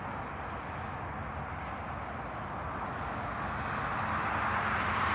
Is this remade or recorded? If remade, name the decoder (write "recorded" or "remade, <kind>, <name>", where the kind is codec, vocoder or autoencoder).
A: recorded